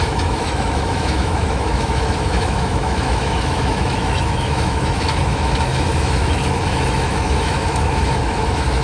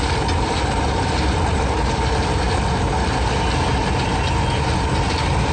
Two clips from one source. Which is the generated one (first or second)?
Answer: first